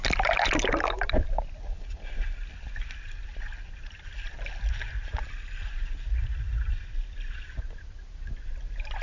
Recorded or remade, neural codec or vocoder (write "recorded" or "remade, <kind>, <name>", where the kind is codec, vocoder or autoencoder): recorded